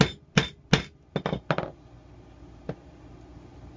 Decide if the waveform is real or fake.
real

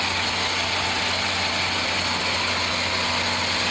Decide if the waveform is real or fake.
real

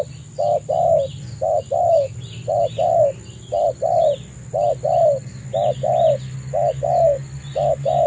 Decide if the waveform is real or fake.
real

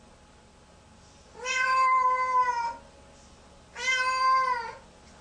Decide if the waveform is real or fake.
real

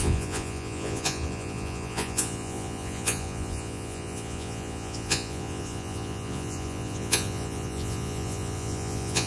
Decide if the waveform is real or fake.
fake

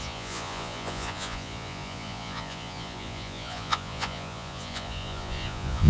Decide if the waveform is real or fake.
fake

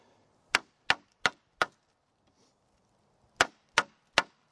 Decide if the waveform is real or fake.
real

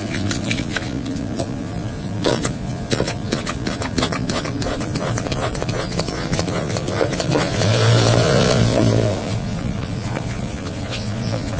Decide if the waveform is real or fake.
fake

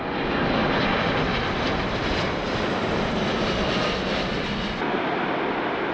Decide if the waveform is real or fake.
real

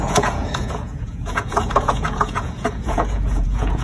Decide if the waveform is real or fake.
fake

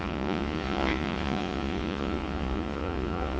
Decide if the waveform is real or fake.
fake